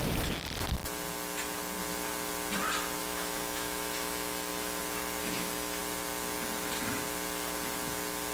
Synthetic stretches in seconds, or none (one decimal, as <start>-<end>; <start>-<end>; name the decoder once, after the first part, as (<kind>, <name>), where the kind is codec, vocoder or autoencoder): 3.0-4.8 (autoencoder, DAC-VAE); 5.2-5.8